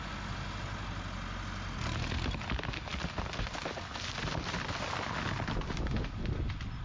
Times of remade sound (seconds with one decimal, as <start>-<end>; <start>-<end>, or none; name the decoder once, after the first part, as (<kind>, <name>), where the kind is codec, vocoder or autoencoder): none